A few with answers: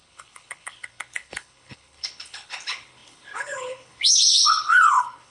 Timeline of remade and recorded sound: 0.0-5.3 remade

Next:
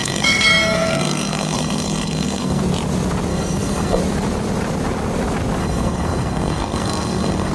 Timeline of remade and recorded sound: 0.0-2.6 remade; 2.6-3.3 recorded; 3.3-4.0 remade; 4.0-5.6 recorded; 5.6-7.5 remade

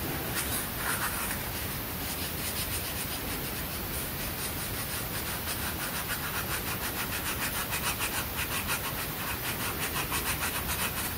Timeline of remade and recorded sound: 0.0-0.5 remade; 0.5-1.9 recorded; 1.9-3.7 remade; 3.7-4.3 recorded; 4.3-7.6 remade; 7.6-9.3 recorded; 9.3-11.2 remade